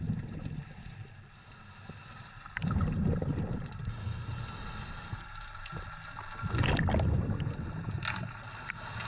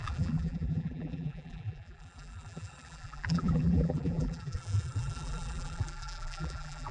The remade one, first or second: second